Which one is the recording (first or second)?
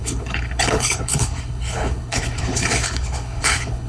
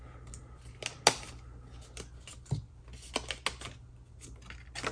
second